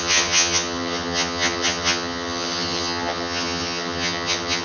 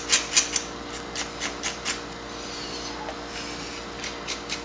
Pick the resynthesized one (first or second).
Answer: first